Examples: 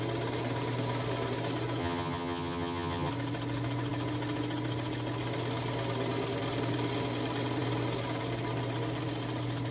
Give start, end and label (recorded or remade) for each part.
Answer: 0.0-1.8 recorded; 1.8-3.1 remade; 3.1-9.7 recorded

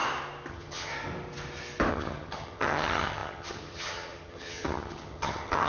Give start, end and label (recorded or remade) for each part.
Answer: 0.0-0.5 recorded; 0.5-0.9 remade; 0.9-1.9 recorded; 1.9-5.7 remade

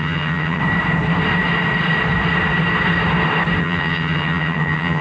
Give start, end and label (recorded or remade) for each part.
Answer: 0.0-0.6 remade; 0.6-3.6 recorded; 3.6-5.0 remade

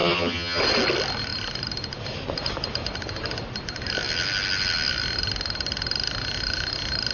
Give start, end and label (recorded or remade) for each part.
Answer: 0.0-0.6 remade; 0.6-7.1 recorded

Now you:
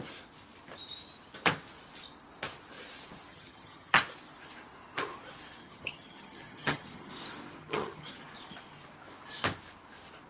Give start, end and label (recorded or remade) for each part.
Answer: 0.0-3.3 recorded; 3.3-4.0 remade; 4.0-5.6 recorded; 5.6-7.1 remade; 7.1-7.6 recorded; 7.6-8.2 remade; 8.2-10.3 recorded

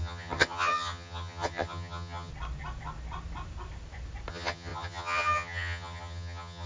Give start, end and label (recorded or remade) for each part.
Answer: 0.0-2.3 remade; 2.3-4.3 recorded; 4.3-6.7 remade

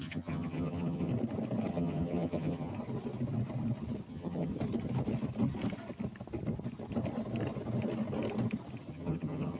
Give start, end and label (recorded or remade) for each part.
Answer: 0.0-1.1 remade; 1.1-1.7 recorded; 1.7-2.7 remade; 2.7-4.1 recorded; 4.1-4.5 remade; 4.5-8.9 recorded; 8.9-9.6 remade